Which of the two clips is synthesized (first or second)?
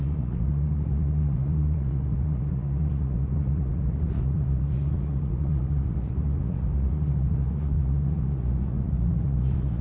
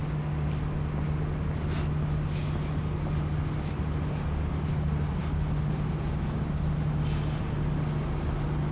first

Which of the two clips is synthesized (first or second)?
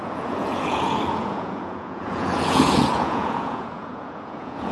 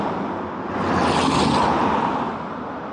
first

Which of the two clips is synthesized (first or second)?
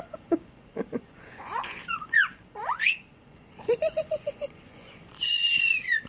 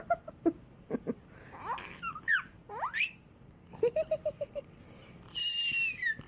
first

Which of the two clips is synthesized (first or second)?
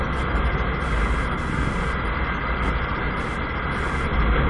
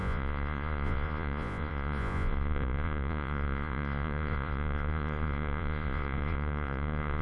second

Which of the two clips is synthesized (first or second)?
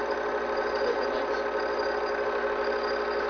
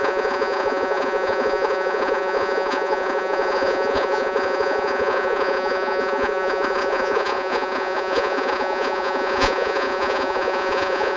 second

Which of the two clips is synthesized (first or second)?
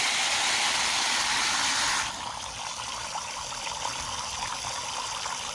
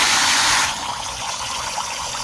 second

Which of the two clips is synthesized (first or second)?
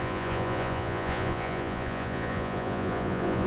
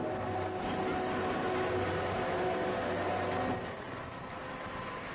first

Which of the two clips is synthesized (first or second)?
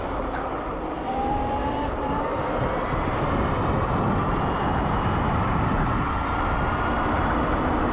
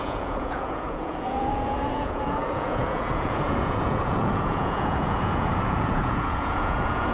second